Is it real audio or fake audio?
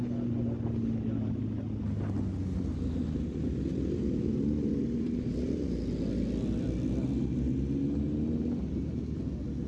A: real